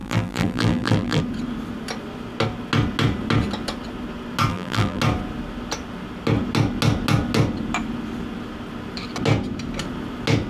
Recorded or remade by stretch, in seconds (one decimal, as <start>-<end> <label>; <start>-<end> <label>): 0.0-1.2 remade; 1.2-4.5 recorded; 4.5-5.0 remade; 5.0-10.5 recorded